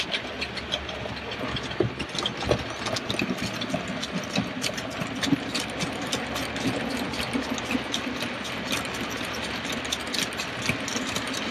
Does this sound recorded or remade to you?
recorded